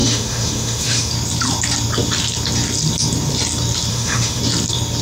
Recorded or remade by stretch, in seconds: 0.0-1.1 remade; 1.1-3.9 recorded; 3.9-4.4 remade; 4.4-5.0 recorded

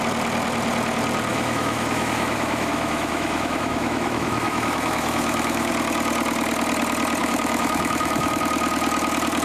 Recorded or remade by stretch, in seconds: 0.0-1.3 recorded; 1.3-5.7 remade; 5.7-7.2 recorded; 7.2-8.4 remade; 8.4-9.4 recorded